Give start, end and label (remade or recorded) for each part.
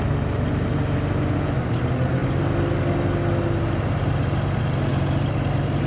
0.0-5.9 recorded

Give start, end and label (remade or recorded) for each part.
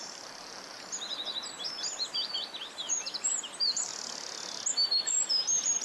0.0-0.7 remade; 0.7-2.0 recorded; 2.0-3.9 remade; 3.9-5.1 recorded; 5.1-5.8 remade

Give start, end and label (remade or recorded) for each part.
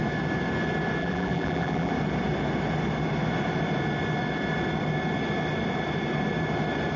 0.0-1.0 recorded; 1.0-1.9 remade; 1.9-7.0 recorded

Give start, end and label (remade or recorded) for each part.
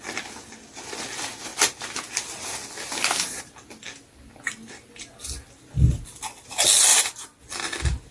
0.0-6.9 recorded; 6.9-7.4 remade; 7.4-8.1 recorded